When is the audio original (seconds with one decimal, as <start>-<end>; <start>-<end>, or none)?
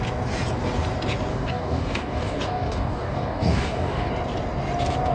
0.0-1.3; 4.1-5.1